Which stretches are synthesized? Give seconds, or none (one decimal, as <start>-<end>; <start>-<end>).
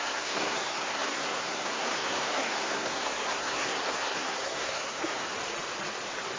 0.0-5.3